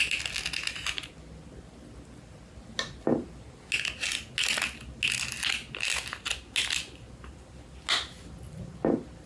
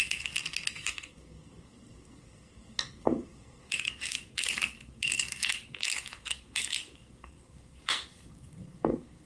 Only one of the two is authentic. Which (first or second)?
first